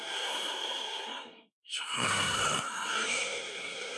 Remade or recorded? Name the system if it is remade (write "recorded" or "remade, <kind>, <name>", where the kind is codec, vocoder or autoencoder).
remade, codec, SNAC